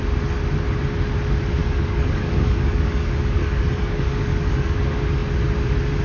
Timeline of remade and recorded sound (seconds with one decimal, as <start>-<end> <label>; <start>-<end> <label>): 0.0-1.6 recorded; 1.6-4.8 remade; 4.8-6.0 recorded